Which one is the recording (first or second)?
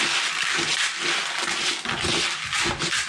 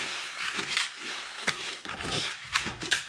first